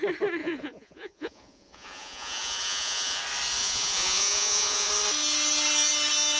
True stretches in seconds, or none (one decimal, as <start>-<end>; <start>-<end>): 0.0-0.4; 3.2-3.6; 4.9-6.4